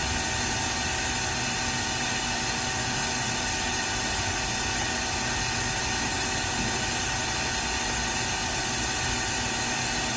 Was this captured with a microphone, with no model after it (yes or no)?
yes